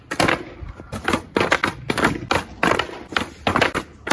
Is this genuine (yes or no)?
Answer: yes